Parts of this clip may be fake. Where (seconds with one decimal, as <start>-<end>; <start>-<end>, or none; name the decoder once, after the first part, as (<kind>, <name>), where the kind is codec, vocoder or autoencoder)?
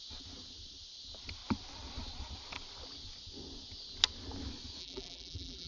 4.8-5.7 (vocoder, BigVGAN v2)